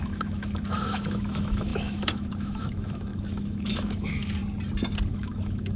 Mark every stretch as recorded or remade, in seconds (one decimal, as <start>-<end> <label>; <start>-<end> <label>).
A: 0.0-4.4 remade; 4.4-5.1 recorded; 5.1-5.8 remade

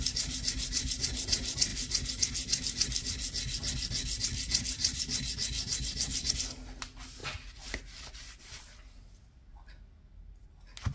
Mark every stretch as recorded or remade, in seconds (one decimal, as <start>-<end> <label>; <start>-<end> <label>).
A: 0.0-10.9 recorded

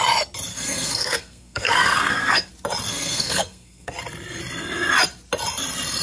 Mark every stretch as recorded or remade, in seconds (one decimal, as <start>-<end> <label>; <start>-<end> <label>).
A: 0.0-0.5 recorded; 0.5-2.5 remade; 2.5-2.9 recorded; 2.9-3.9 remade; 3.9-6.0 recorded

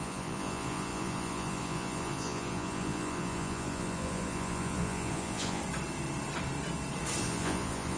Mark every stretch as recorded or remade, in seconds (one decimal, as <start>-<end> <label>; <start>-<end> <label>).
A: 0.0-5.6 remade; 5.6-7.2 recorded; 7.2-8.0 remade